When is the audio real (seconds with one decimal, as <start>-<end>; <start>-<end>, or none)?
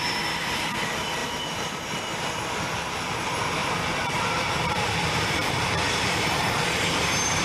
0.0-1.2; 1.9-3.6; 6.5-7.4